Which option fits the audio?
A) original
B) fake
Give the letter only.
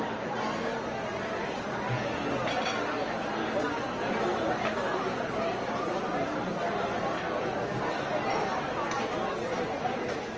A